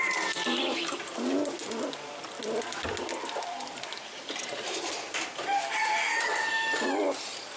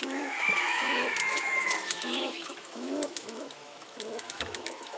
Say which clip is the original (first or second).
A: first